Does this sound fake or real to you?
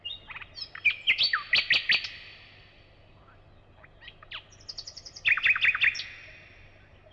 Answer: real